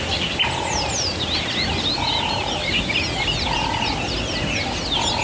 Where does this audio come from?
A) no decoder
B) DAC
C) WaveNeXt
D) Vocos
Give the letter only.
A